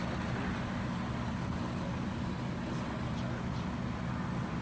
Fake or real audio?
real